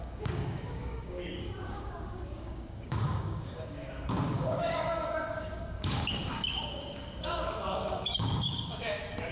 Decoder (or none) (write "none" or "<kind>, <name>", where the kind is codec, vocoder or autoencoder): codec, DAC